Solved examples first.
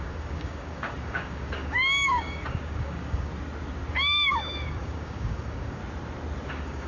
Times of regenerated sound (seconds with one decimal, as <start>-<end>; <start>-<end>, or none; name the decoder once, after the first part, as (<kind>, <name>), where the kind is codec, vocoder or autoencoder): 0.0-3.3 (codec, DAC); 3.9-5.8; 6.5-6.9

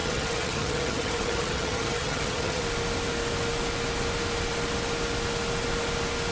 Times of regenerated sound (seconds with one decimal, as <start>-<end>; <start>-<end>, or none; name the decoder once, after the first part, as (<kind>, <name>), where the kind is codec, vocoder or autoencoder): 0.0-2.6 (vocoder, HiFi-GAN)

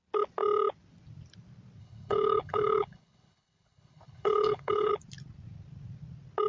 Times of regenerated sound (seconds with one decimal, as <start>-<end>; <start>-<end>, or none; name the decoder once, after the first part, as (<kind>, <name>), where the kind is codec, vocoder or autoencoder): 1.8-4.9 (codec, HILCodec)

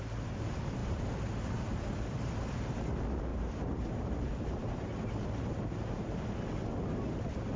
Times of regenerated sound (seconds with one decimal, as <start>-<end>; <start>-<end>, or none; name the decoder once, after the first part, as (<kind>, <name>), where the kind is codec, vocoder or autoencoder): 0.8-2.3 (vocoder, BigVGAN v2); 3.3-6.3

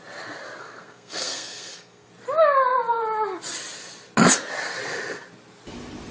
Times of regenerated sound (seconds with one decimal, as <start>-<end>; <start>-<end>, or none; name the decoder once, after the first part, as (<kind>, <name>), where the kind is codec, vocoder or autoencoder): 0.6-2.1 (codec, SNAC)